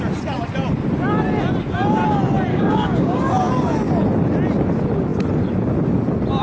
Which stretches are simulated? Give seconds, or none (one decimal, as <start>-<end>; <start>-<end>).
2.5-3.2